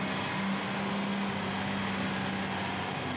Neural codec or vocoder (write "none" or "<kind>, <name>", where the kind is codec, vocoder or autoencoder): none